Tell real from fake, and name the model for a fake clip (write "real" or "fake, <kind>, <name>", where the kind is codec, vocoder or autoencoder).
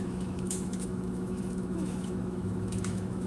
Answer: fake, autoencoder, DAC-VAE